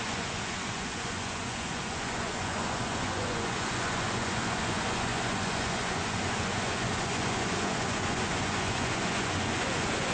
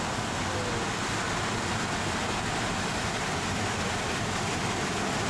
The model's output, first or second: first